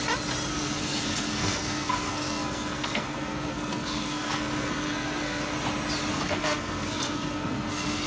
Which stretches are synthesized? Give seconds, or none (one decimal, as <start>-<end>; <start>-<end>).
0.5-5.4; 6.1-8.1